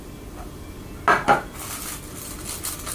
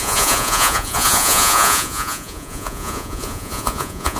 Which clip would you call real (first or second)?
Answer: first